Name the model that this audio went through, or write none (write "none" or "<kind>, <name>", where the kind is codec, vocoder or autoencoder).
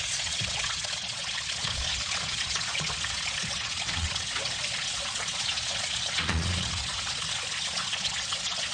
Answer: vocoder, Vocos